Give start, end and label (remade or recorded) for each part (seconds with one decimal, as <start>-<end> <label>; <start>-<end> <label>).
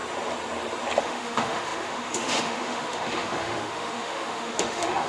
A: 0.0-1.0 recorded; 1.0-5.1 remade